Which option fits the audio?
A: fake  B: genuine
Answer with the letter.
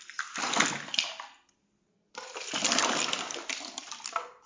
B